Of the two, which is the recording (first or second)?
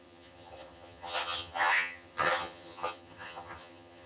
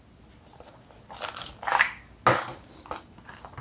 second